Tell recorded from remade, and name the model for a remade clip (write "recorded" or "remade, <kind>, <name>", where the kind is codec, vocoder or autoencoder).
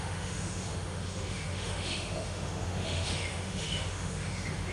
remade, autoencoder, DAC-VAE